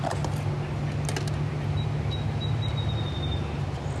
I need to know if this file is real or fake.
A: real